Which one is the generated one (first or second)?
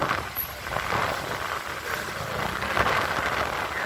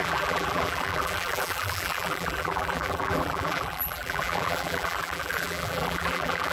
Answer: second